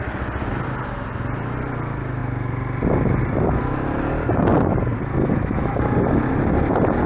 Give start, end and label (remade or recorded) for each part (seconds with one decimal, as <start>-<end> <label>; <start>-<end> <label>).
0.0-5.2 recorded; 5.2-5.8 remade; 5.8-7.1 recorded